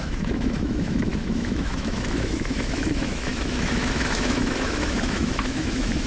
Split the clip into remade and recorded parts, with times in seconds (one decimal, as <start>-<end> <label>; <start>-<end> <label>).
0.0-6.1 remade